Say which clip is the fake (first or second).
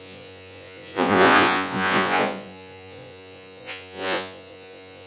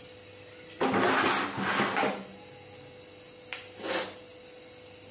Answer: first